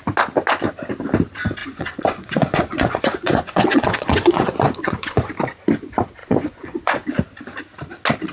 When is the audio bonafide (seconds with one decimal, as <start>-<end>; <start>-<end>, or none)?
0.0-1.6; 5.3-6.2; 7.1-8.3